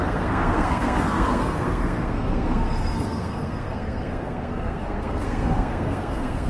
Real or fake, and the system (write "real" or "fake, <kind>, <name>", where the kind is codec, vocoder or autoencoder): fake, codec, SNAC